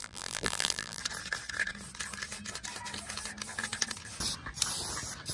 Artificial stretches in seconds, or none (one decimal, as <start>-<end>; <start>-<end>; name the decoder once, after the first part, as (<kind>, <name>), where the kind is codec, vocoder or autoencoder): 0.0-1.0 (vocoder, BigVGAN v2)